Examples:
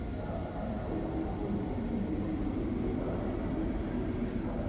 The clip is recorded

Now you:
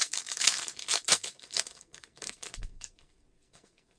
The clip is remade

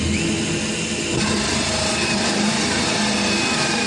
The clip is recorded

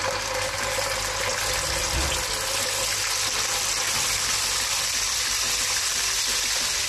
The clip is recorded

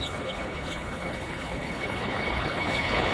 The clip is remade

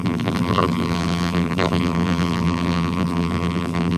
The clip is remade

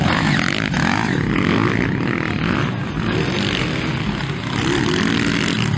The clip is recorded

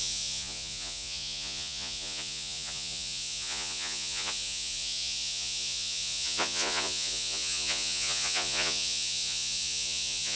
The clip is remade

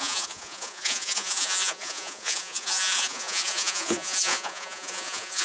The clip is remade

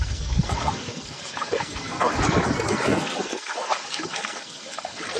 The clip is remade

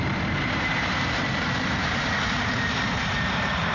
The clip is remade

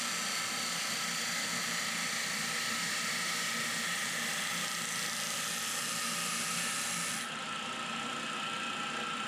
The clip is recorded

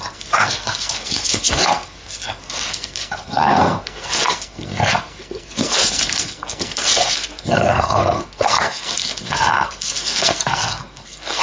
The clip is remade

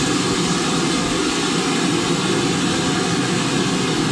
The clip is recorded